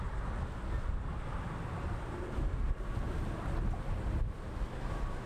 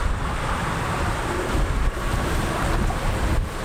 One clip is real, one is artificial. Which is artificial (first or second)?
second